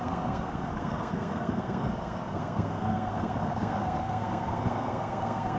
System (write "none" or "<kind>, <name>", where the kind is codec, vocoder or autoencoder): codec, SNAC